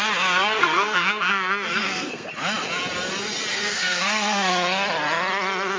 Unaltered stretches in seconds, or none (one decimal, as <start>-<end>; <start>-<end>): 0.0-0.6; 2.3-3.5; 4.5-5.8